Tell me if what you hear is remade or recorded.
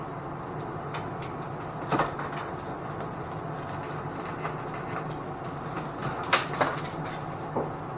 recorded